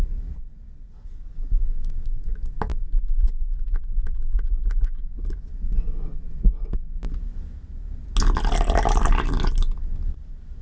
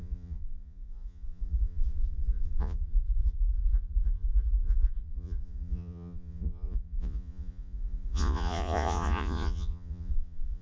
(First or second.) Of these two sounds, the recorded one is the first